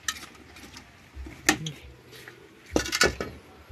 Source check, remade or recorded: recorded